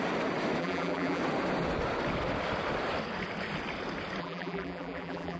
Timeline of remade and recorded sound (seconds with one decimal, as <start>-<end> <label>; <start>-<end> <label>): 0.0-0.6 recorded; 0.6-1.2 remade; 1.2-4.2 recorded; 4.2-5.4 remade